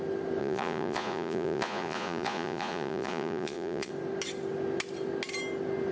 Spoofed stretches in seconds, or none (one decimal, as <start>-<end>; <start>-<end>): 0.4-3.9